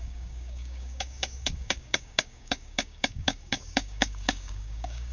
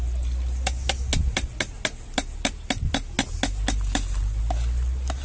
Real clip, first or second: second